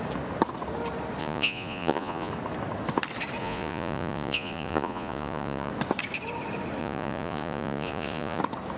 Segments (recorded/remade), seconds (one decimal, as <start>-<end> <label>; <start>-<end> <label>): 0.0-1.2 recorded; 1.2-2.3 remade; 2.3-3.4 recorded; 3.4-5.7 remade; 5.7-6.8 recorded; 6.8-8.4 remade; 8.4-8.8 recorded